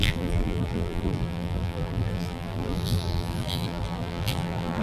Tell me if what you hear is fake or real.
fake